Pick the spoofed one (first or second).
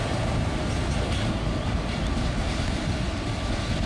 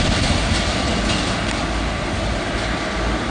first